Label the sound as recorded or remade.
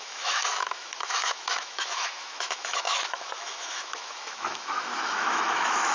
remade